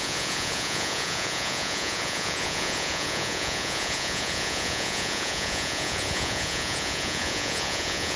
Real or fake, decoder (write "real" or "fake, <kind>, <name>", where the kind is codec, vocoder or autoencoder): fake, vocoder, Vocos